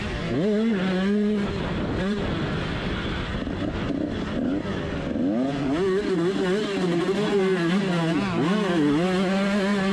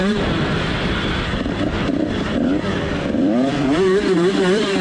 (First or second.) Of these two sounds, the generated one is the second